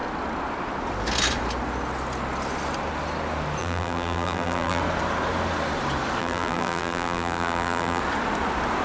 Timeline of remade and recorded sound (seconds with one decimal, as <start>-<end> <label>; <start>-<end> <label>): 0.0-3.6 recorded; 3.6-4.8 remade; 4.8-6.2 recorded; 6.2-8.0 remade; 8.0-8.8 recorded